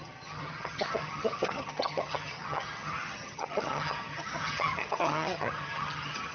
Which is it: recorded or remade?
remade